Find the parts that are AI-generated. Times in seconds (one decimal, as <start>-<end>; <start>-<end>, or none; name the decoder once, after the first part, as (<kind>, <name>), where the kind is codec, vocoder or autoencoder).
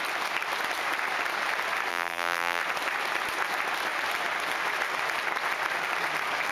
1.9-2.6 (vocoder, BigVGAN v2)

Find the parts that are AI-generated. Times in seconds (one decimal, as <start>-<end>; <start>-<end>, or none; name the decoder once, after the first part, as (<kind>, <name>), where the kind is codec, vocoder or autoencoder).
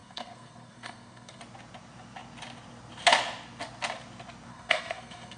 0.0-1.4 (codec, SNAC); 4.5-5.4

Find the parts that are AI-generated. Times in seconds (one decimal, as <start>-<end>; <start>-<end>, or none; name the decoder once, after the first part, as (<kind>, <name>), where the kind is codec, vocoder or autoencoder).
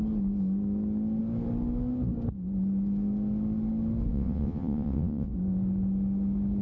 4.1-5.3 (vocoder, WaveNeXt)